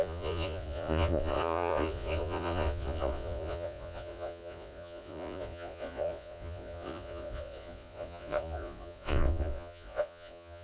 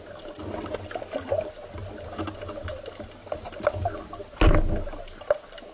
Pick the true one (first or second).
second